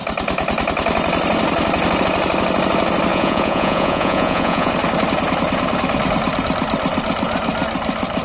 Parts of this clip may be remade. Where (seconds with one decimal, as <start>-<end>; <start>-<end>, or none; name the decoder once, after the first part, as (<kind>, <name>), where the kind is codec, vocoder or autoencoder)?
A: 3.1-4.7 (vocoder, Vocos)